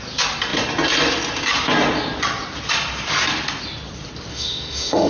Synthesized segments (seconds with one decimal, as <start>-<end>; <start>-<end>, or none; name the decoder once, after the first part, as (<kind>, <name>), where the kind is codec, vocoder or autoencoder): 4.3-5.1 (autoencoder, DAC-VAE)